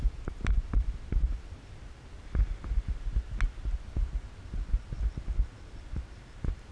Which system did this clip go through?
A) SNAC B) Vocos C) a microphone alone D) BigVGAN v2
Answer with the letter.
C